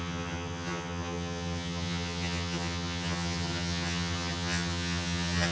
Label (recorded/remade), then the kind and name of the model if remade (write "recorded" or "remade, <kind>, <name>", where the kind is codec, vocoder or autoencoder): remade, vocoder, HiFi-GAN